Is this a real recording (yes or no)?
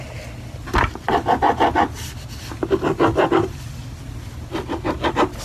yes